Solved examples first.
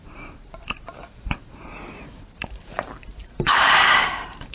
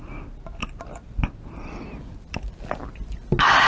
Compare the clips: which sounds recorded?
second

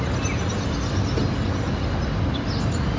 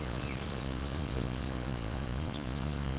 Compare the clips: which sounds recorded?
first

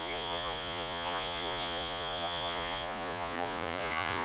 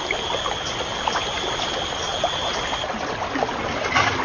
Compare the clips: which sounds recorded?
second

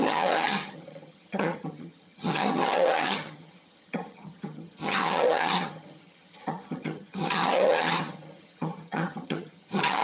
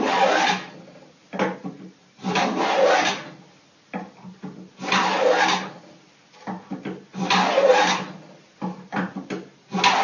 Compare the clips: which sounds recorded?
second